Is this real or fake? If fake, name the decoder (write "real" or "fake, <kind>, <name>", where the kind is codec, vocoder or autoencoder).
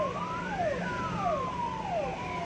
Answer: real